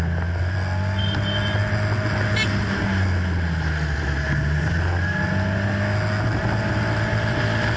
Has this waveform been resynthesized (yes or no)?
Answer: no